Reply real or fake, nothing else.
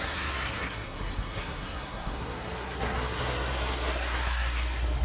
fake